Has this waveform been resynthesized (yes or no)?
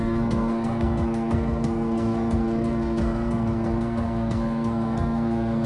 yes